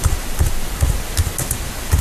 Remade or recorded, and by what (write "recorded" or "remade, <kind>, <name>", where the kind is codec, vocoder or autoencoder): recorded